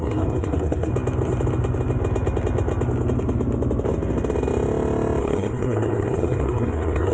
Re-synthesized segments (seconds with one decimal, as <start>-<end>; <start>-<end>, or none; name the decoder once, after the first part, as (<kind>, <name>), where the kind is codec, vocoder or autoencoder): 0.0-0.9 (codec, SNAC); 5.2-7.1